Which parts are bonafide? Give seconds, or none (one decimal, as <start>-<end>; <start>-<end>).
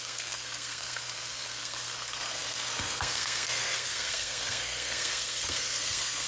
none